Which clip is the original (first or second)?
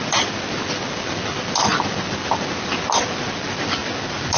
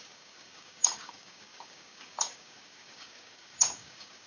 first